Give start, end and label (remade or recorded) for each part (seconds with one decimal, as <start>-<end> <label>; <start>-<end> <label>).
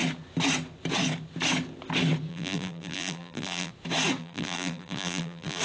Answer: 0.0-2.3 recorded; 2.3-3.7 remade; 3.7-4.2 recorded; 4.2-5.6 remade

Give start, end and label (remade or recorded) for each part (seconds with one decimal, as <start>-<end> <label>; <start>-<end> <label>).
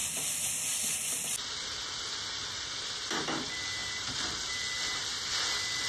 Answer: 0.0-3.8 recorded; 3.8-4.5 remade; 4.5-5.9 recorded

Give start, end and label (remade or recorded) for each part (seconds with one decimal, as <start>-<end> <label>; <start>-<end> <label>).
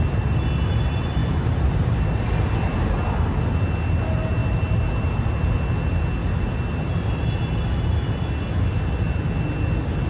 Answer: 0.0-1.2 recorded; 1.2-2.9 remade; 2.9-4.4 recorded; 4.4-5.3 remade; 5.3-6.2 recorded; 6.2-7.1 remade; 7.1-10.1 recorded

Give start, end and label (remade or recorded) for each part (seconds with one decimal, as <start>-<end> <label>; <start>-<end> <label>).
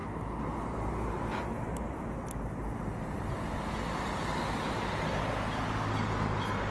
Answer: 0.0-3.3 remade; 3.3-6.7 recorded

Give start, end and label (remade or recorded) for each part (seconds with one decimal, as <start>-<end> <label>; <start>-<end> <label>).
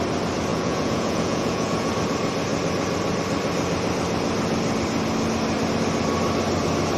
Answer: 0.0-0.5 recorded; 0.5-1.9 remade; 1.9-7.0 recorded